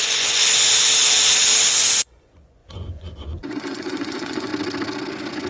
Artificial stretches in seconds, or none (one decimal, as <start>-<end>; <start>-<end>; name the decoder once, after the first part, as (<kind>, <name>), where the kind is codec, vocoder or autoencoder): 0.0-0.4 (vocoder, Vocos); 1.7-4.5